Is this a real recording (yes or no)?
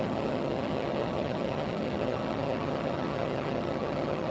no